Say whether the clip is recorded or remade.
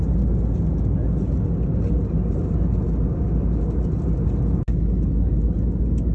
recorded